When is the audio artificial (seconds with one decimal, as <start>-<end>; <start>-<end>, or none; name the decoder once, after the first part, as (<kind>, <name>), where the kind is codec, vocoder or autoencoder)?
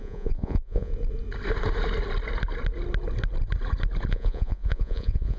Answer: 0.0-0.9 (vocoder, Vocos); 4.1-5.4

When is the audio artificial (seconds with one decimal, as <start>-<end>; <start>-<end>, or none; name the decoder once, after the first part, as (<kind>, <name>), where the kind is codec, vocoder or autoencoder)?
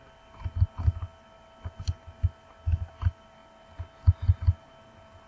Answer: none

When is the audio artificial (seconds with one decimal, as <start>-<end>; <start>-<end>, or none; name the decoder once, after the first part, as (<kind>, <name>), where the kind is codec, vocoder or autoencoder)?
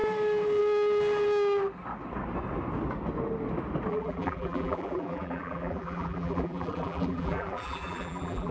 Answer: 3.9-8.5 (vocoder, BigVGAN v2)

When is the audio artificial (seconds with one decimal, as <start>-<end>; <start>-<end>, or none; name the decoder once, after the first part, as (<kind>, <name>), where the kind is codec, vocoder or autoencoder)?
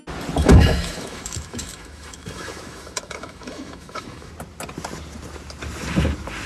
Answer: 0.4-4.3 (autoencoder, DAC-VAE)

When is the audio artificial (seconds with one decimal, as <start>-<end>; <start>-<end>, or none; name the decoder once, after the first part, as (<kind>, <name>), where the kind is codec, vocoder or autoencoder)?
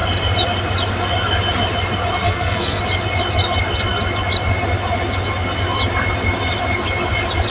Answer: 2.2-2.8 (codec, SNAC)